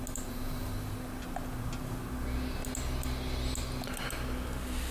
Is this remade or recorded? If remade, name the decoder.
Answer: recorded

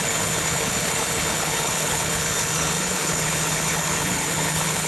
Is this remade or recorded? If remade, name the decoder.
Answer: remade, codec, HILCodec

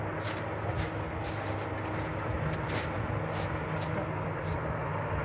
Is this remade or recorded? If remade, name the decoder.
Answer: recorded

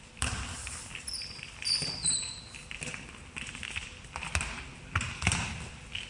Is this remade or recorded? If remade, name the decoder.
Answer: recorded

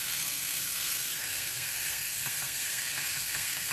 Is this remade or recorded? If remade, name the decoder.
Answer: remade, codec, SNAC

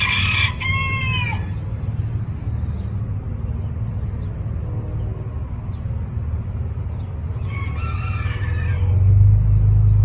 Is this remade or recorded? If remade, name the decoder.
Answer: recorded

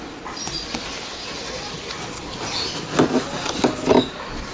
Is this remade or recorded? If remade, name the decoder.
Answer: recorded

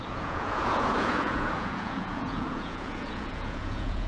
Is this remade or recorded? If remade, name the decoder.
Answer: remade, vocoder, Vocos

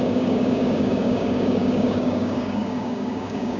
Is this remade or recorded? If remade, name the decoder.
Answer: remade, codec, DAC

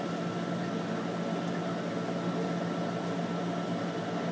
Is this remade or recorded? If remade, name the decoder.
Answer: recorded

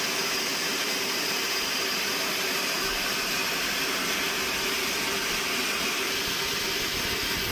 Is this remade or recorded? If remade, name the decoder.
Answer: recorded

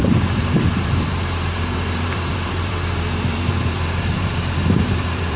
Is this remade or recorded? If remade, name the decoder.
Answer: remade, vocoder, BigVGAN v2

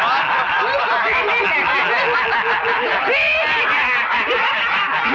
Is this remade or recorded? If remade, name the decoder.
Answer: recorded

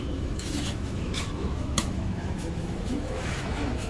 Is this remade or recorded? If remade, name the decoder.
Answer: remade, autoencoder, DAC-VAE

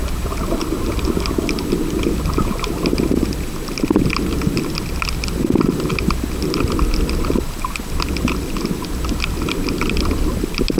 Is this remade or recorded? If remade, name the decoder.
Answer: recorded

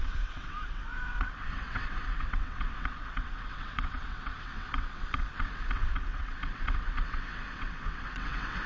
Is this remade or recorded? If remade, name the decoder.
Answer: remade, vocoder, WaveNeXt